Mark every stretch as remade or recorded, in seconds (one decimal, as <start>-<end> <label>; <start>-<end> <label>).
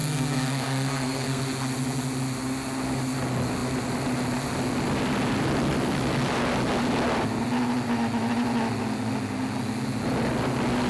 0.0-1.4 remade; 1.4-10.9 recorded